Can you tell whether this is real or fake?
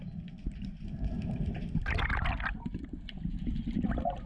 real